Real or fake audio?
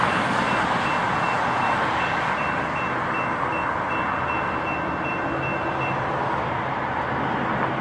real